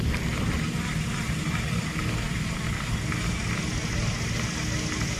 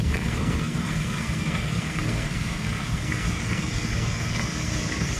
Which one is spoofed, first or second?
second